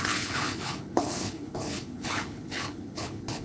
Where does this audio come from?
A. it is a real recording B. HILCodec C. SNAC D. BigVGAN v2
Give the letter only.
B